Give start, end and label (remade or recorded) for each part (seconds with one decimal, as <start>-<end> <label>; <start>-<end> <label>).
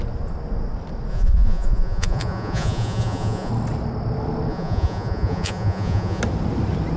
0.0-1.1 recorded; 1.1-3.5 remade; 3.5-4.5 recorded; 4.5-6.2 remade; 6.2-7.0 recorded